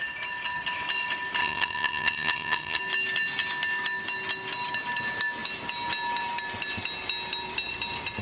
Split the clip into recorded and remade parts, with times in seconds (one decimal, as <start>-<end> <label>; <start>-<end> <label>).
0.0-1.4 recorded; 1.4-2.8 remade; 2.8-8.2 recorded